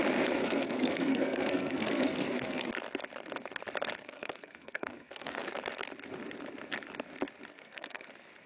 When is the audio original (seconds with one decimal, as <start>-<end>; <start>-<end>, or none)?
0.0-0.4; 2.7-4.0; 5.5-7.5; 8.1-8.5